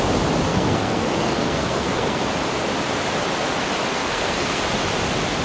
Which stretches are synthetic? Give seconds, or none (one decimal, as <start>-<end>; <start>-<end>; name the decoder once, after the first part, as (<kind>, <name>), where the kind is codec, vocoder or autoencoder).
0.5-2.2 (codec, SNAC); 3.9-4.6